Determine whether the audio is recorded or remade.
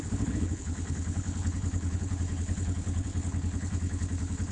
remade